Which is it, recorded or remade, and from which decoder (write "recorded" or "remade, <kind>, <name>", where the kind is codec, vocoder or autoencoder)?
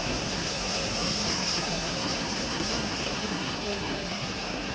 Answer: remade, codec, SNAC